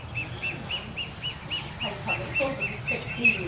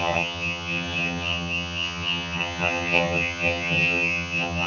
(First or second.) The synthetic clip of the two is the second